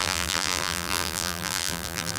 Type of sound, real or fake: fake